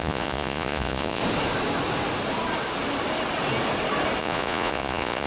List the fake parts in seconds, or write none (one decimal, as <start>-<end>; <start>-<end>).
0.0-1.2; 4.2-5.3